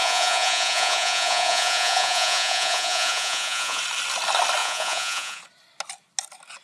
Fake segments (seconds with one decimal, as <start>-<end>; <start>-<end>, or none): 0.0-3.8; 4.6-5.4